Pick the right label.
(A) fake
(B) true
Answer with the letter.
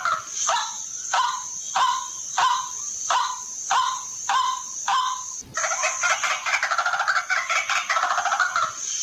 B